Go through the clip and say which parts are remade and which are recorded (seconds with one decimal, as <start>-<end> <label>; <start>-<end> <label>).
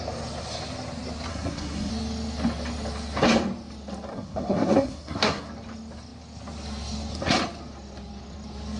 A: 0.0-1.3 recorded; 1.3-1.9 remade; 1.9-4.1 recorded; 4.1-5.5 remade; 5.5-8.8 recorded